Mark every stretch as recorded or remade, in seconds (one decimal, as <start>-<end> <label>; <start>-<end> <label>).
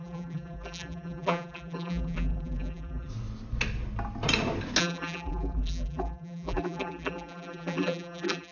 0.0-3.1 remade; 3.1-4.8 recorded; 4.8-8.5 remade